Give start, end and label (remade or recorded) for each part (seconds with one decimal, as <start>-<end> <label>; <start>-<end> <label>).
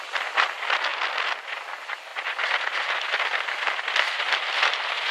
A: 0.0-5.1 recorded